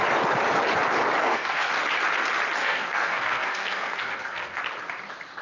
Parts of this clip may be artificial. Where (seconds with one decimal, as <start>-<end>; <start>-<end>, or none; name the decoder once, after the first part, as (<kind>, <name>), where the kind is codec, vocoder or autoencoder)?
1.2-1.7 (codec, SNAC); 2.6-4.6